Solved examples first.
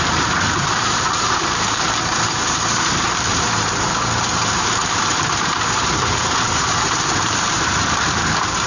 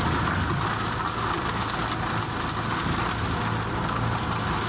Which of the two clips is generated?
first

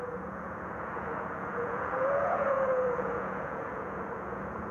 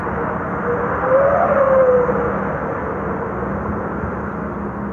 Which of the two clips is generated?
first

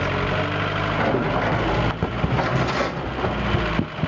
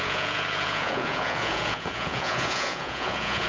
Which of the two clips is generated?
second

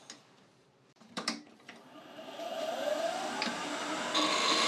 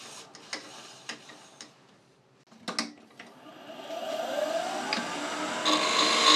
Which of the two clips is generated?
first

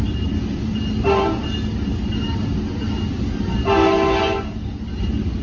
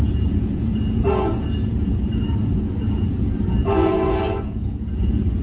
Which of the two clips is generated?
second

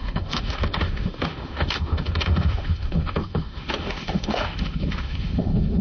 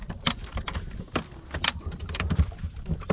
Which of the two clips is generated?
first